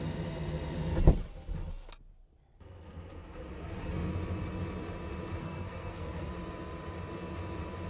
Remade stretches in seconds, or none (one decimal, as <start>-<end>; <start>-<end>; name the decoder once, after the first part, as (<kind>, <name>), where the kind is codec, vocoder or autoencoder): 5.4-6.3 (codec, SNAC)